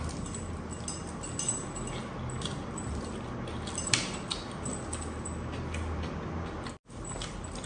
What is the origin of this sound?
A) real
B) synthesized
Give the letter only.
A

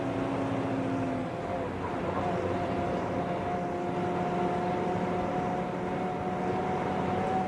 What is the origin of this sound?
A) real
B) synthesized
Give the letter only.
A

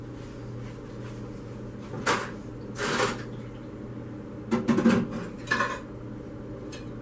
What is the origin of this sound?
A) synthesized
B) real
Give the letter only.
B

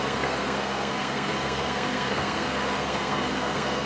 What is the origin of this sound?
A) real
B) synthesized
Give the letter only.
B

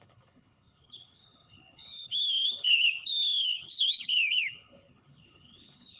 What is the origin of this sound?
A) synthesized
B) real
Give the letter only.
A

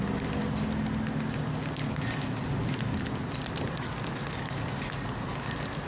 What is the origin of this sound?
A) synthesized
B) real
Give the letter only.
B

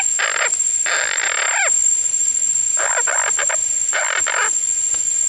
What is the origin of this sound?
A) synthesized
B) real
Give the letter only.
B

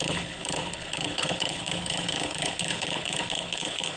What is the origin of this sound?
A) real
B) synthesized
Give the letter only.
B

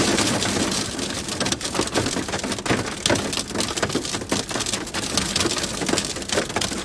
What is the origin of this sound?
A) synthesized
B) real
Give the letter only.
B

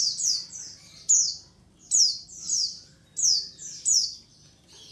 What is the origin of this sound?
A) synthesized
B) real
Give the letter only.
B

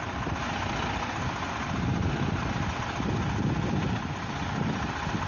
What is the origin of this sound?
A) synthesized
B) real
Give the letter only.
B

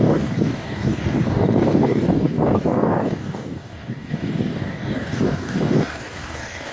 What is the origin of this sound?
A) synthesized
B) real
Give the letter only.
A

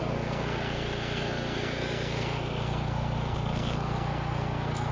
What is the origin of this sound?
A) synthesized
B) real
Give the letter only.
A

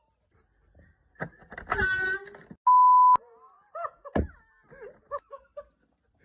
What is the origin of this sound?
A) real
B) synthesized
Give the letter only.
A